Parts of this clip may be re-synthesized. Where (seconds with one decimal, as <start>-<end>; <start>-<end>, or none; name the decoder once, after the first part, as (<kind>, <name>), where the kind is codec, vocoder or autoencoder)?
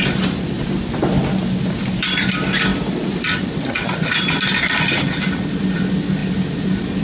none